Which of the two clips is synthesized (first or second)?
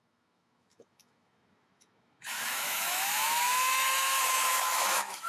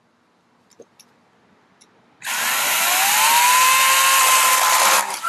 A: first